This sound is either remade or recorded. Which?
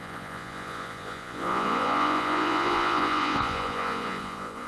remade